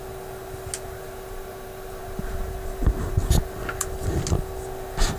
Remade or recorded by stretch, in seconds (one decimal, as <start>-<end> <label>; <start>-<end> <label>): 0.0-5.2 recorded